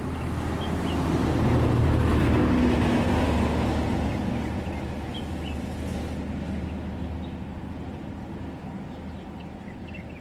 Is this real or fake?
real